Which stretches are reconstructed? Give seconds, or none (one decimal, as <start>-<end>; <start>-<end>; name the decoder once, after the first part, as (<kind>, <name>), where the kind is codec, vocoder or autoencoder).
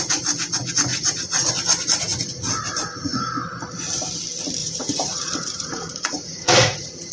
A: 0.9-1.5 (vocoder, Vocos); 4.6-7.1